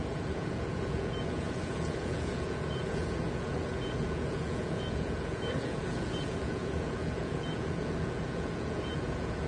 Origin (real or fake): fake